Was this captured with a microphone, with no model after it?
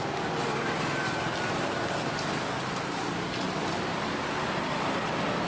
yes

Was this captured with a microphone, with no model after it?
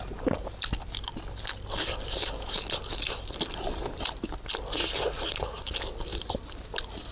yes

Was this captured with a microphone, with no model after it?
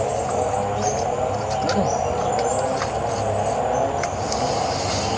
yes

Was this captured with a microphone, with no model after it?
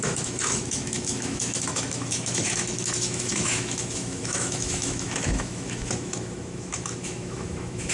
no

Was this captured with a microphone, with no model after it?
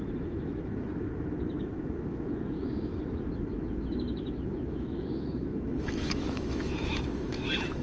no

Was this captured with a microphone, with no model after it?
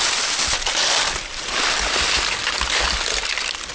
yes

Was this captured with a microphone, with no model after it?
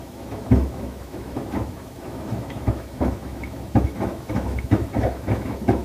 no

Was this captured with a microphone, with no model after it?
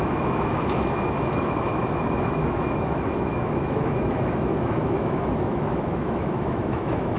no